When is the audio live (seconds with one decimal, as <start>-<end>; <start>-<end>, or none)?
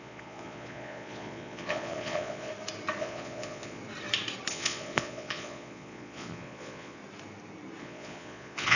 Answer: 2.5-3.0; 3.8-4.5; 7.0-7.8